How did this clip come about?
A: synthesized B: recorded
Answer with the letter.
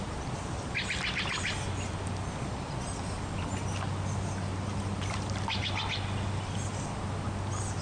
B